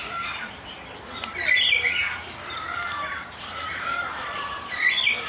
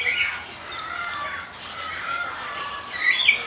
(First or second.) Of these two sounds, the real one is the second